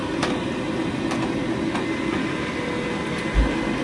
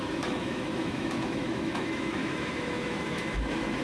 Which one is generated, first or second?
second